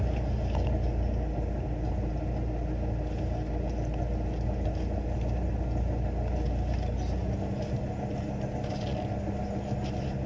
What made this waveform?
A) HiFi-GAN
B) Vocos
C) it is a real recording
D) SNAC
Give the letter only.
C